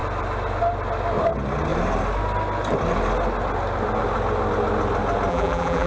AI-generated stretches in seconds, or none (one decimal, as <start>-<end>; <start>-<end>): 5.3-5.9

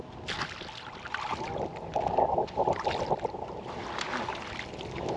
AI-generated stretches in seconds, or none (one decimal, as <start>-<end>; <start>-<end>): none

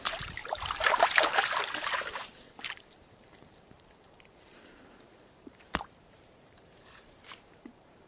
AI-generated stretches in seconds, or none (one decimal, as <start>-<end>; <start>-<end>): 0.0-8.1

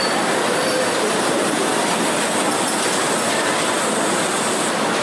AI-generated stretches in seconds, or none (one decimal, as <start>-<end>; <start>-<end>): 0.0-1.7